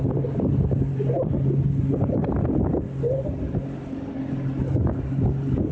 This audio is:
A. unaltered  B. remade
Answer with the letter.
A